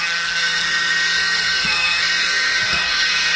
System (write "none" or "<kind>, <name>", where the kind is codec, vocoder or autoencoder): codec, SNAC